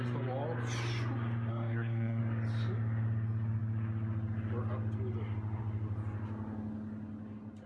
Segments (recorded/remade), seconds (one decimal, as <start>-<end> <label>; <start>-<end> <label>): 0.0-1.5 recorded; 1.5-2.2 remade; 2.2-7.7 recorded